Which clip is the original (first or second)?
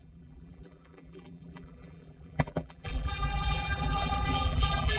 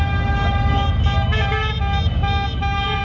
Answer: second